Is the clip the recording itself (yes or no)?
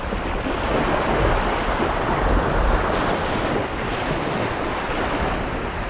yes